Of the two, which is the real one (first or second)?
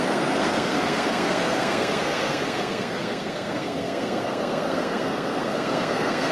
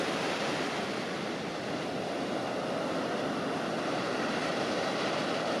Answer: second